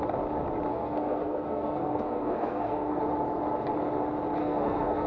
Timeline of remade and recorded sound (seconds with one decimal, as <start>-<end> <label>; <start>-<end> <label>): 0.0-0.7 recorded; 0.7-3.0 remade; 3.0-4.4 recorded; 4.4-5.1 remade